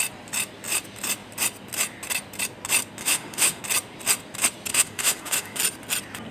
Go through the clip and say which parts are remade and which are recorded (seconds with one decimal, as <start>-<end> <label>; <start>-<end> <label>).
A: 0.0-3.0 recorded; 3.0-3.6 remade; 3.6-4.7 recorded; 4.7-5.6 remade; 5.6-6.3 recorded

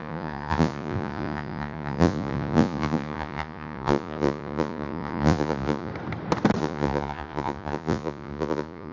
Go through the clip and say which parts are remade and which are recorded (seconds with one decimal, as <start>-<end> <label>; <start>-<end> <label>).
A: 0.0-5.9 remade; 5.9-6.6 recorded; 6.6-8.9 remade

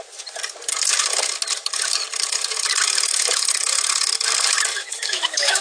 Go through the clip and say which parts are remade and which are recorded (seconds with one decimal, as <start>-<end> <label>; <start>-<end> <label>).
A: 0.0-4.7 recorded; 4.7-5.6 remade

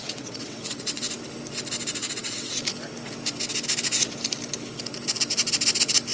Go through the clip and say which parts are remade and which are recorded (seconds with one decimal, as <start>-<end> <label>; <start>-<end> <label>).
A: 0.0-1.1 remade; 1.1-2.0 recorded; 2.0-2.6 remade; 2.6-6.1 recorded

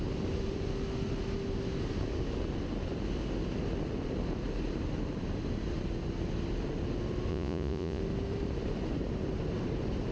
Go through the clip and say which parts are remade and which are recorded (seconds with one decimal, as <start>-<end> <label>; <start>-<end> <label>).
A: 0.0-7.3 recorded; 7.3-8.0 remade; 8.0-10.1 recorded